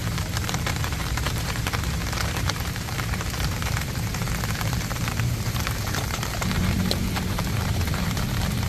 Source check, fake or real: fake